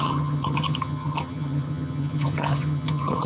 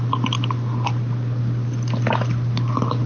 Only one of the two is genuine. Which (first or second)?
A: second